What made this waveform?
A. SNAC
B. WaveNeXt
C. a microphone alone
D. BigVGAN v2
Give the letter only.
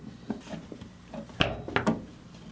C